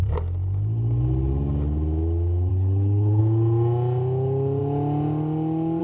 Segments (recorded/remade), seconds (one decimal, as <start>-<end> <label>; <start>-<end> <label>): 0.0-2.5 recorded; 2.5-3.2 remade; 3.2-5.8 recorded